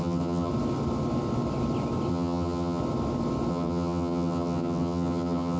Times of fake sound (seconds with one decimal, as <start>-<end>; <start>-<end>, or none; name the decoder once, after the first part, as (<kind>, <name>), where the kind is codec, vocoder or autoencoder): 0.0-0.5 (vocoder, HiFi-GAN); 2.1-2.8; 3.5-5.6